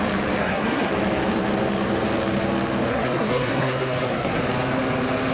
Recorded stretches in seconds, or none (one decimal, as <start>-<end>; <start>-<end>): 0.0-0.4; 0.9-2.9; 4.4-5.3